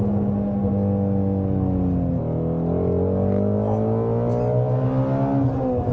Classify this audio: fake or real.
real